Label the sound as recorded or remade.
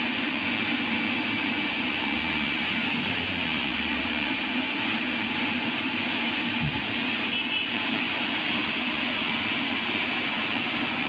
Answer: remade